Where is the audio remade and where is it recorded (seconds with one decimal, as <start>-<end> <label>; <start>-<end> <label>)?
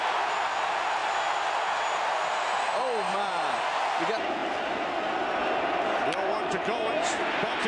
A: 0.0-1.0 recorded; 1.0-3.6 remade; 3.6-7.7 recorded